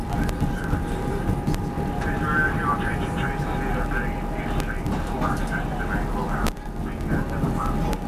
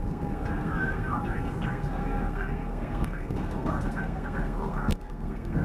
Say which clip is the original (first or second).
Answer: first